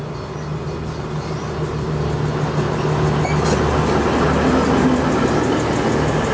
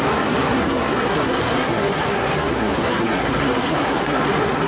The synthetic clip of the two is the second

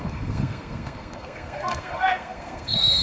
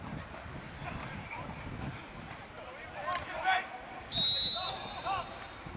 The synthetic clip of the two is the first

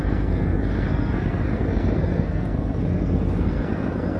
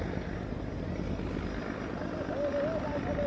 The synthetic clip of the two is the first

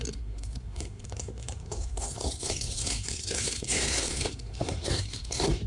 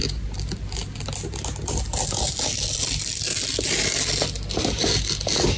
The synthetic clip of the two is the first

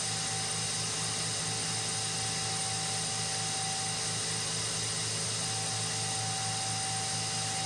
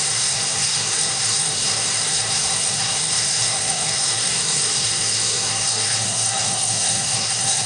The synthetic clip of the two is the second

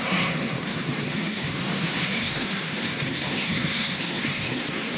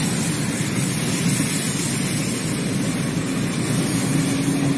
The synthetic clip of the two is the first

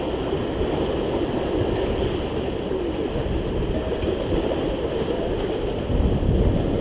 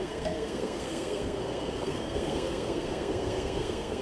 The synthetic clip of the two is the second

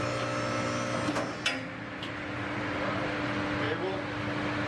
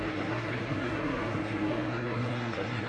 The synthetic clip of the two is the second